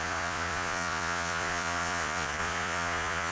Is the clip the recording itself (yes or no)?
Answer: no